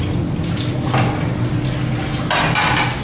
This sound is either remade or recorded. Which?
recorded